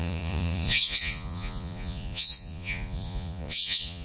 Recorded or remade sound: remade